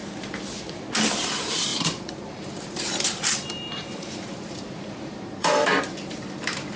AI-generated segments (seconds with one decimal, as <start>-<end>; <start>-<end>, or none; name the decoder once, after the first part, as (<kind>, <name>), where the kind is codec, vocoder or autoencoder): 1.1-6.8 (vocoder, BigVGAN v2)